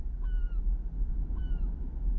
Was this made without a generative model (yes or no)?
yes